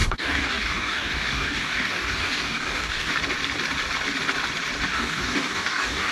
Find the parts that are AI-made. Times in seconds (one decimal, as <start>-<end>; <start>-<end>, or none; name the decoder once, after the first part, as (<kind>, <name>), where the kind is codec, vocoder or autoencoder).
0.0-3.1 (codec, DAC); 4.9-6.1